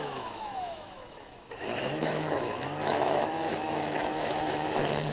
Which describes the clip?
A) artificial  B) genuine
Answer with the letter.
A